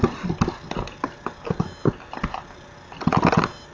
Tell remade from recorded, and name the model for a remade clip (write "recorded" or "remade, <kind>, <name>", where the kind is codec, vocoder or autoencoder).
recorded